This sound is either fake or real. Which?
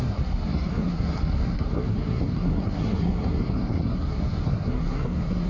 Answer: fake